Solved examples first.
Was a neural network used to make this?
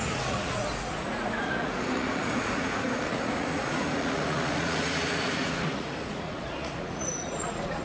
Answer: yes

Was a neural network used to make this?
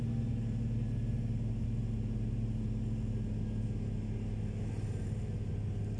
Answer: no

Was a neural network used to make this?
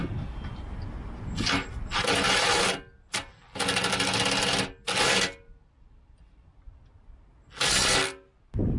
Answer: no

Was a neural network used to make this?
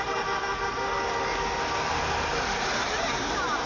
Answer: no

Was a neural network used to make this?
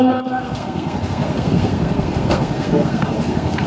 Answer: yes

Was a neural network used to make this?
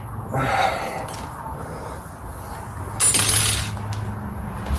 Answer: no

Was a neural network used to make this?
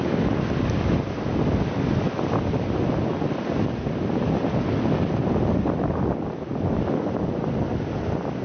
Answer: no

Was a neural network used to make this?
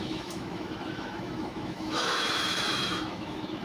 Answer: yes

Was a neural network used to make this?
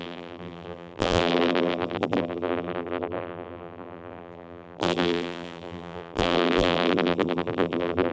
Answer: yes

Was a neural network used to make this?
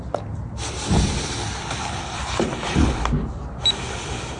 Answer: no